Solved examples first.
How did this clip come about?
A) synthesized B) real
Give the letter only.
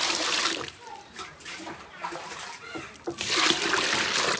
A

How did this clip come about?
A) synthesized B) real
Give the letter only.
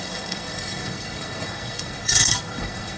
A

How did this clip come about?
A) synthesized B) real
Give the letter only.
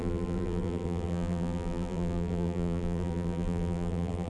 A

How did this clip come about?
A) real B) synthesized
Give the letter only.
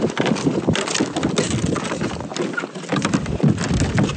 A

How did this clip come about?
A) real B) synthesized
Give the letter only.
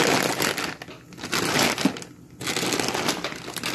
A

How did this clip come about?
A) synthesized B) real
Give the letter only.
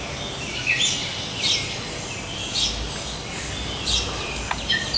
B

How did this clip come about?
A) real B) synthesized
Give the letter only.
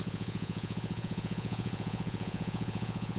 B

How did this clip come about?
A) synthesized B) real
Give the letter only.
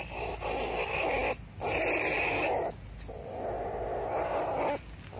B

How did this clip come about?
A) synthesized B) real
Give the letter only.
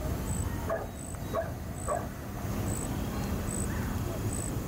B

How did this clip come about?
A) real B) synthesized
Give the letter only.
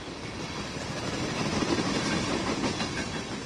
A